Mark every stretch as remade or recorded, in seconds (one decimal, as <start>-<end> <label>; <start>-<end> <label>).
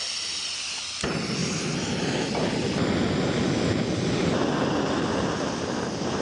0.0-6.2 recorded